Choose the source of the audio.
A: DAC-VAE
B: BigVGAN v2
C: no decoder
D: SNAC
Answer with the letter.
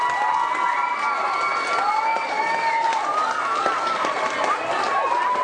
C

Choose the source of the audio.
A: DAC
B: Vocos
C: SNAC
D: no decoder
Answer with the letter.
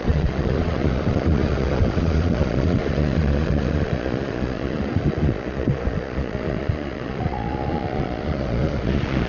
B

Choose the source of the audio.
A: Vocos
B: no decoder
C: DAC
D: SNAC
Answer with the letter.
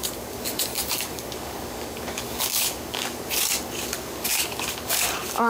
C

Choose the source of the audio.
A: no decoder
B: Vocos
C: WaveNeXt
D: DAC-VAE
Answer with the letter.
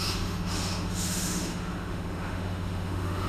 D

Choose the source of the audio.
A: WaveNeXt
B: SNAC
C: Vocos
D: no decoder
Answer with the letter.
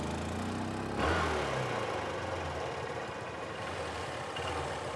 D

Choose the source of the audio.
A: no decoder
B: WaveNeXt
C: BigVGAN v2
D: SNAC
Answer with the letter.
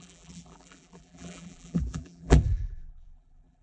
C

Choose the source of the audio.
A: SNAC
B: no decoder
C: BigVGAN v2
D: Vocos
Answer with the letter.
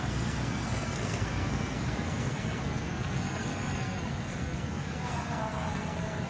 A